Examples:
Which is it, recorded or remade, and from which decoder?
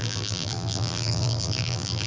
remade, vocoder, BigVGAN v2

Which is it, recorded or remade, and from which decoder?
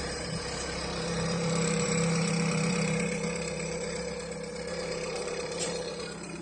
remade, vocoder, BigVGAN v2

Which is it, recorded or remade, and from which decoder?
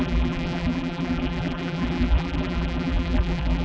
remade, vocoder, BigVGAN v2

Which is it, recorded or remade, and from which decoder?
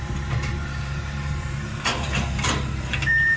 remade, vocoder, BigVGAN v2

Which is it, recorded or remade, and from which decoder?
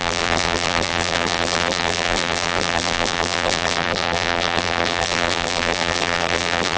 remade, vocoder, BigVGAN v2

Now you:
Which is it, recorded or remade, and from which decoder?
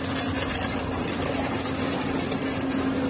recorded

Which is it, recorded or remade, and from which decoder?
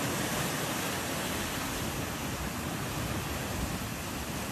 recorded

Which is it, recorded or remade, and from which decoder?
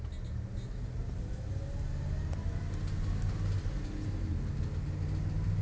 recorded